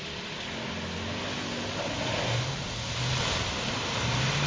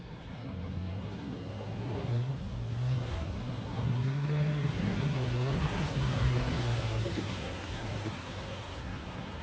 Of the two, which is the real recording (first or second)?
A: first